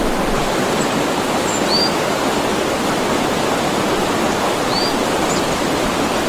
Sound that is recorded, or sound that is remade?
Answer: recorded